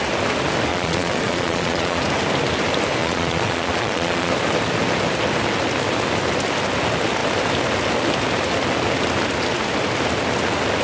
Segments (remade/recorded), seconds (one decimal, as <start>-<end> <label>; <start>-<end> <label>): 0.0-0.7 recorded; 0.7-2.0 remade; 2.0-3.0 recorded; 3.0-4.3 remade; 4.3-10.8 recorded